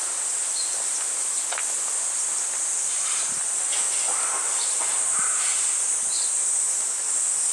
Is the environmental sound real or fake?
real